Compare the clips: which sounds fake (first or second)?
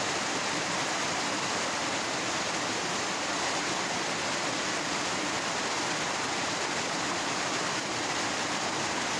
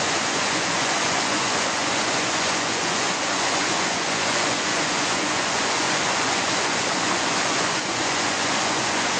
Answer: second